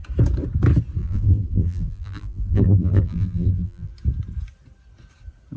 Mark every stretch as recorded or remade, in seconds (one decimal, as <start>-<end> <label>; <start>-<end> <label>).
0.0-1.0 recorded; 1.0-3.9 remade; 3.9-5.6 recorded